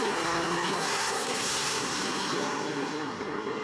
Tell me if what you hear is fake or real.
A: fake